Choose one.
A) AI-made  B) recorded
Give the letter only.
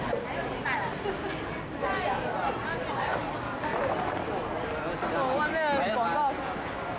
B